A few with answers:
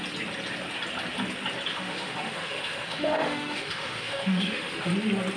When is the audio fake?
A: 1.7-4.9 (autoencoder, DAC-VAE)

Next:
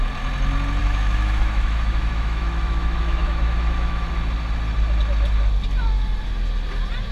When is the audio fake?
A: 0.8-4.1 (autoencoder, DAC-VAE)

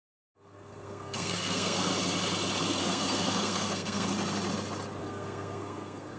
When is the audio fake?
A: 0.0-1.9 (codec, SNAC); 2.8-4.1; 5.0-6.2

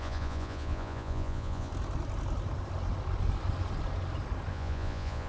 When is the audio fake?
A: 0.0-1.7 (vocoder, Vocos); 4.5-5.3

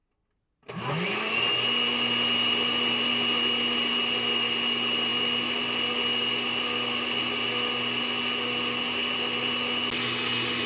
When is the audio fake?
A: none